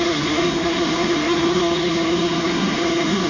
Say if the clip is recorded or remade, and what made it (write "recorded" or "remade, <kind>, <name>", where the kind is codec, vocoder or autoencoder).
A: remade, codec, SNAC